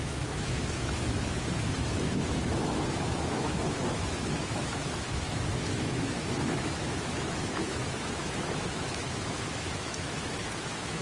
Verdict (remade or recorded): remade